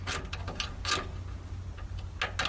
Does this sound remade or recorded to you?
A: recorded